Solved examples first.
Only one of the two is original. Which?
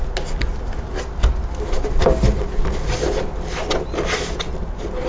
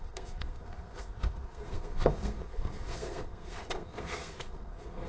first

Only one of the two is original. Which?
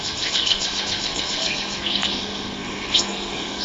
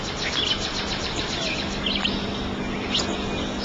second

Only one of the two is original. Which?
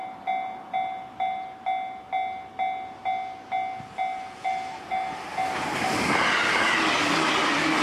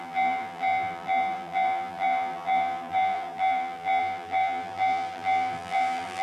first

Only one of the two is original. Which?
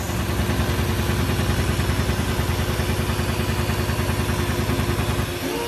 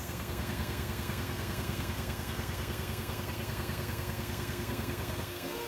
first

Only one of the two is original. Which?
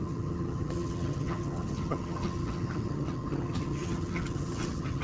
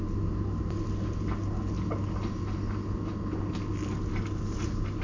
second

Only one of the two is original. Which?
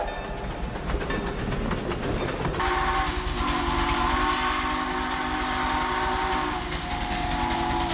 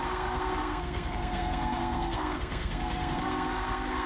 first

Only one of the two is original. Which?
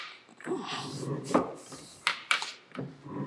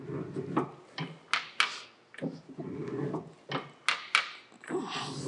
second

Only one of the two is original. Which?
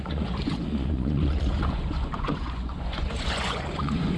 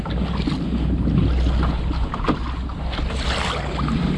second